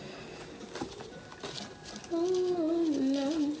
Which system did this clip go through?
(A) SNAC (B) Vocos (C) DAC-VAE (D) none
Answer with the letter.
D